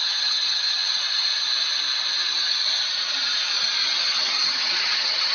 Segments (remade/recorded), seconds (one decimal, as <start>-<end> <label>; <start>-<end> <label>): 0.0-0.8 remade; 0.8-4.0 recorded; 4.0-5.3 remade